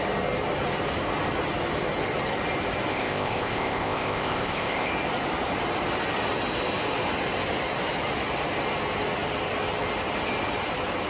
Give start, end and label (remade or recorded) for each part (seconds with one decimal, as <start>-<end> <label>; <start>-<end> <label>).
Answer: 0.0-2.9 recorded; 2.9-4.9 remade; 4.9-11.1 recorded